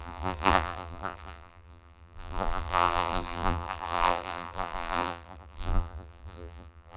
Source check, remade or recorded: remade